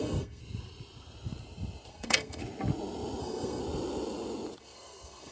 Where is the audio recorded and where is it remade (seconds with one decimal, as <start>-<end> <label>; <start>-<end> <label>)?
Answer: 0.0-0.4 remade; 0.4-1.9 recorded; 1.9-2.4 remade; 2.4-3.2 recorded; 3.2-3.6 remade; 3.6-4.6 recorded; 4.6-5.3 remade